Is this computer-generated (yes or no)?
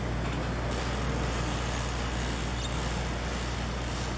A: no